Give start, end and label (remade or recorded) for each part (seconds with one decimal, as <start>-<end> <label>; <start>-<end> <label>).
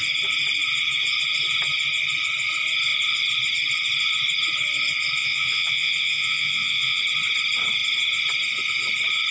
0.0-5.2 recorded; 5.2-7.0 remade; 7.0-9.3 recorded